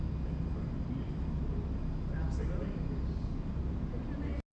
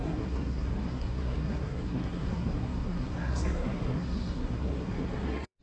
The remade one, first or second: second